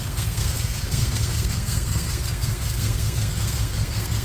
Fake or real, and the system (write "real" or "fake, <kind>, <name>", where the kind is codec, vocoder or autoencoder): fake, codec, SNAC